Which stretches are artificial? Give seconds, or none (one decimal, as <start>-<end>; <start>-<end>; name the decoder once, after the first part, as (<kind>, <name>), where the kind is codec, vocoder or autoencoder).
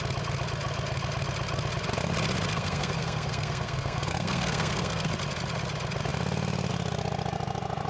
2.5-5.1 (codec, SNAC)